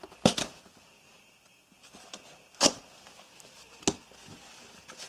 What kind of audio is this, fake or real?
real